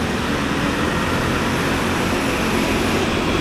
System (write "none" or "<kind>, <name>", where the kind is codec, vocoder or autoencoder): none